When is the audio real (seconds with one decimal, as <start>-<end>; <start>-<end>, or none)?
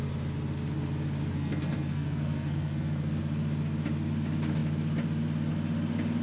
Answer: 0.0-1.3; 3.2-6.2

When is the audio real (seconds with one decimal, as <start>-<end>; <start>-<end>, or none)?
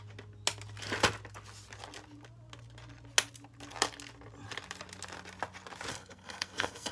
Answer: 0.0-5.9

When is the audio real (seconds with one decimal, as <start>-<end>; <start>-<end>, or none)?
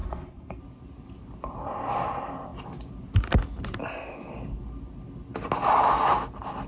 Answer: 0.6-6.7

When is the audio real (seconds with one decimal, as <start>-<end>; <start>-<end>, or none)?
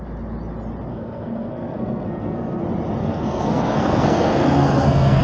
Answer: 0.0-0.9; 2.6-3.0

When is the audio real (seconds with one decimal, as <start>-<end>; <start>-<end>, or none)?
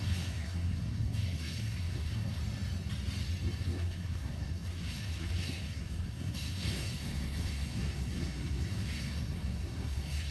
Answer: 2.4-3.6